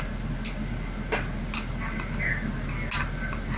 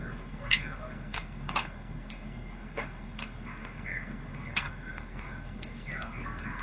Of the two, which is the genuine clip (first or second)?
first